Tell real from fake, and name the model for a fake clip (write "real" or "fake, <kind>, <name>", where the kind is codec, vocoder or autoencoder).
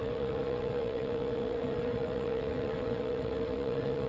fake, vocoder, WaveNeXt